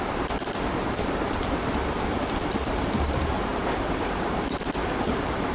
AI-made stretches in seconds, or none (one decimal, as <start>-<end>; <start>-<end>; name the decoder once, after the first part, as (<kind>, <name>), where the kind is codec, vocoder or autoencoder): 0.0-1.8 (vocoder, BigVGAN v2); 3.0-5.5